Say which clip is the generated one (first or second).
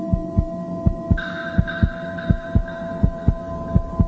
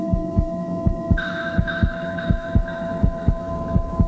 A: second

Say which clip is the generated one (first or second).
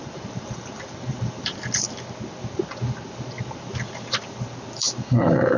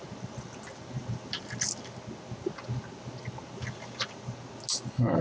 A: first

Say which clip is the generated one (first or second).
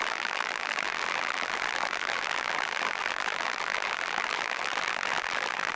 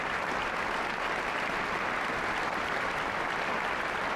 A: first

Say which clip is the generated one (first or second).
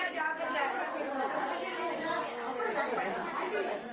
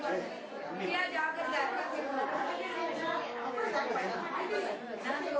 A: first